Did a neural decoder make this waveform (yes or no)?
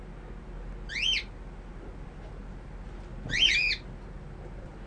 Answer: no